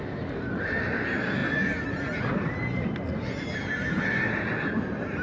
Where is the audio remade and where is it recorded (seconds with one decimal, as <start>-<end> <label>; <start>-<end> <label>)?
0.0-5.2 recorded

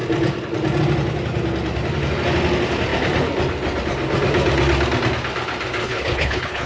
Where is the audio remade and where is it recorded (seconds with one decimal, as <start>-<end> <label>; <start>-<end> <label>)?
0.0-5.8 recorded; 5.8-6.7 remade